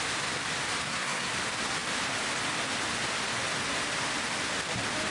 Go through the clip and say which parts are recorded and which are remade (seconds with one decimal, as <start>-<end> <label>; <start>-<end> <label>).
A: 0.0-0.8 recorded; 0.8-1.3 remade; 1.3-5.1 recorded